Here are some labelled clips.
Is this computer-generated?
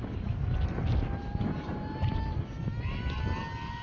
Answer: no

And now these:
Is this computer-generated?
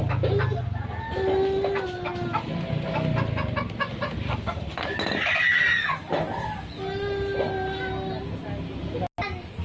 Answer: no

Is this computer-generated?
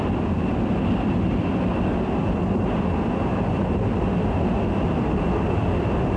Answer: no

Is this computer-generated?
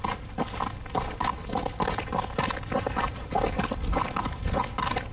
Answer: no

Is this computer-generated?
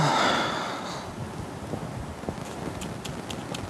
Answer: no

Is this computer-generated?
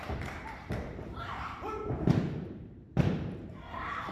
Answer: yes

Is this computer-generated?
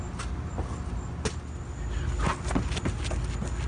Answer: no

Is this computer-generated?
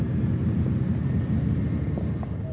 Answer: yes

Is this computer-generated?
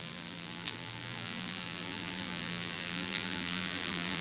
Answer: yes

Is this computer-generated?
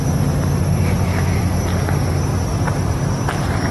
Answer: no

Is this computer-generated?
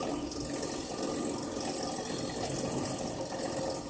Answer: no